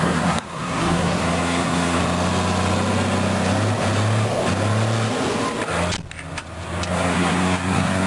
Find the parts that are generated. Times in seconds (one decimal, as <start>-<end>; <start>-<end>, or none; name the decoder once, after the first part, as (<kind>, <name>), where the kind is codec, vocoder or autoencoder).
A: 0.0-2.0 (codec, SNAC); 6.9-8.1